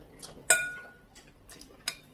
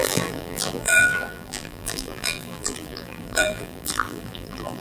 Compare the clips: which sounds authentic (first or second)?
first